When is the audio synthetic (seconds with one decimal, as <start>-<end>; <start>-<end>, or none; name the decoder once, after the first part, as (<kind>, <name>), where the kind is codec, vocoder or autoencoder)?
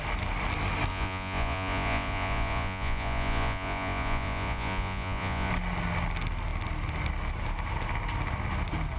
0.9-5.5 (vocoder, Vocos)